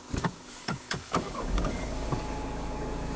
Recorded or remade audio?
remade